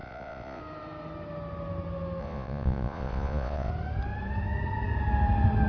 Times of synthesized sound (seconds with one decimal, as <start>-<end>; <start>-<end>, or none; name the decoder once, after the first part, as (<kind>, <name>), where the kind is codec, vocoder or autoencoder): 0.0-0.6 (vocoder, Vocos); 2.2-3.7